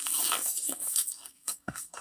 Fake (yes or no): yes